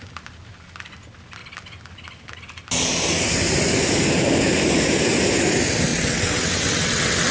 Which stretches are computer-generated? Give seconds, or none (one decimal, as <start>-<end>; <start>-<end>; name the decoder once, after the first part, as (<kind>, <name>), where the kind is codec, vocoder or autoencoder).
5.9-7.3 (vocoder, WaveNeXt)